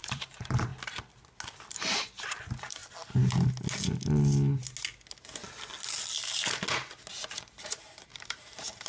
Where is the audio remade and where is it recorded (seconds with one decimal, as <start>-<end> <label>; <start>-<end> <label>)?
0.0-0.7 remade; 0.7-1.7 recorded; 1.7-2.8 remade; 2.8-7.4 recorded; 7.4-8.9 remade